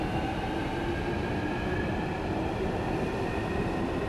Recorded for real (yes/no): yes